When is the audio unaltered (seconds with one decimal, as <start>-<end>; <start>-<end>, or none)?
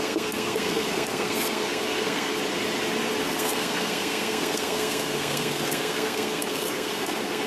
2.3-3.2